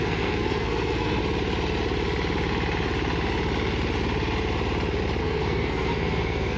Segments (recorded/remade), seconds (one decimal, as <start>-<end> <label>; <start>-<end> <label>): 0.0-1.2 remade; 1.2-5.2 recorded; 5.2-6.6 remade